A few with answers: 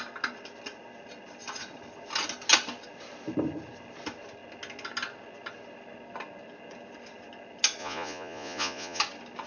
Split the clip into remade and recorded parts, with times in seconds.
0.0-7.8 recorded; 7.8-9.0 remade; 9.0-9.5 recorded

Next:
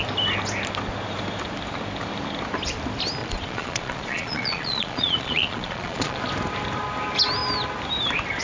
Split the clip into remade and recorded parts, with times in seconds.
0.0-3.2 recorded; 3.2-6.2 remade; 6.2-8.4 recorded

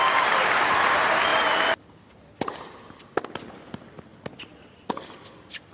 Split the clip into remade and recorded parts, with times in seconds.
0.0-5.7 recorded

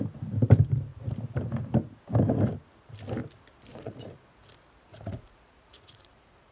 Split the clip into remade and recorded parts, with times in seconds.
0.0-3.7 recorded; 3.7-4.4 remade; 4.4-4.9 recorded; 4.9-6.5 remade

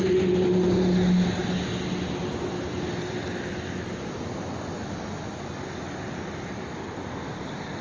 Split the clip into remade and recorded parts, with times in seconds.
0.0-7.8 recorded

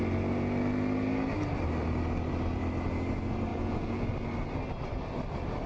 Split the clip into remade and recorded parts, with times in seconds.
0.0-3.5 recorded; 3.5-4.0 remade; 4.0-5.7 recorded